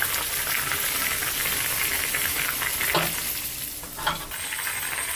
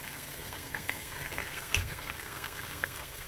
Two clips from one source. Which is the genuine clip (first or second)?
first